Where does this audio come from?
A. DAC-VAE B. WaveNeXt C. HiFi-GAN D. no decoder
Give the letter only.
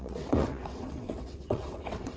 B